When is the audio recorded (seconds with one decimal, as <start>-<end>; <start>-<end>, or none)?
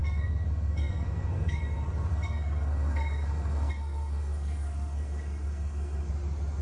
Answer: 1.6-2.1; 6.1-6.6